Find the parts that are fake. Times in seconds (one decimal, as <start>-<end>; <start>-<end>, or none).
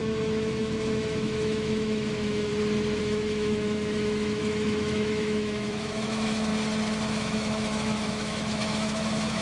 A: 0.0-2.5; 3.0-6.5; 7.1-9.4